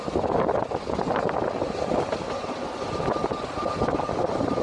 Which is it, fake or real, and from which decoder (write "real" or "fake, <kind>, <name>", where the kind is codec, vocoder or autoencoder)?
real